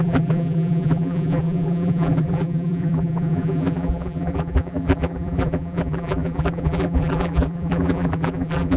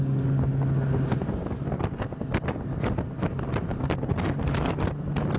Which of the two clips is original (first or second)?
second